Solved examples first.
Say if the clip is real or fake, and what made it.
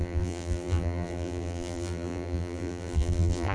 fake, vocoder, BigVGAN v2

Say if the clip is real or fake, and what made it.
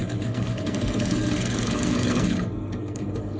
fake, codec, SNAC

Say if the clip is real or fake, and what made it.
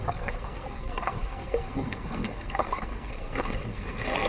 fake, codec, SNAC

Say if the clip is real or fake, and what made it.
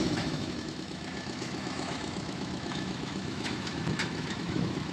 fake, autoencoder, DAC-VAE